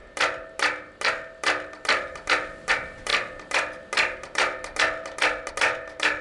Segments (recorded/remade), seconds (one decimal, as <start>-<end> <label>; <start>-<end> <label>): 0.0-6.2 recorded